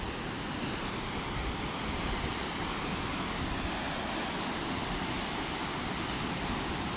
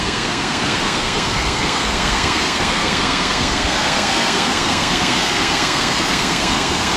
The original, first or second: first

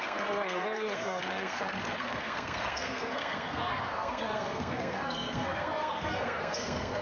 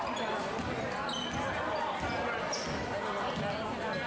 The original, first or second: second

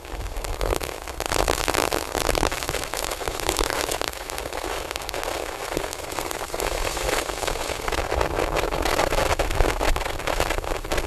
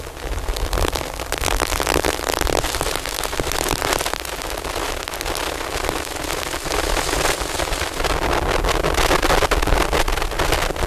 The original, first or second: second